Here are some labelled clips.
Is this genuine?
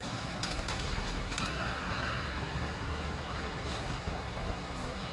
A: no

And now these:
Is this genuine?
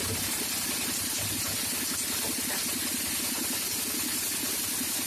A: yes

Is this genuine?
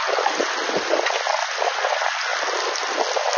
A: yes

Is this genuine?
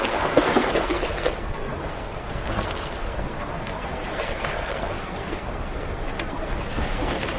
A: no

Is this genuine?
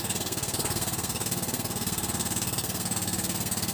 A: no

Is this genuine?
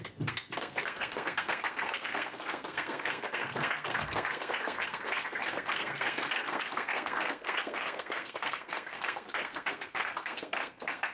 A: no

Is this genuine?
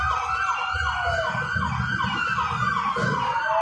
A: yes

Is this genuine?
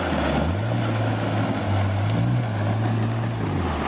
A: yes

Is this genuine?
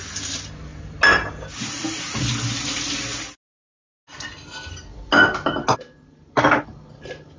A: yes